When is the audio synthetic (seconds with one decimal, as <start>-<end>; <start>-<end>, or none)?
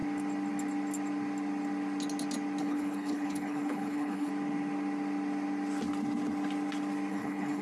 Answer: 2.6-4.3; 7.1-7.6